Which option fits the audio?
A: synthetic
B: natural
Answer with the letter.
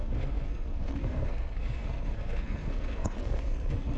A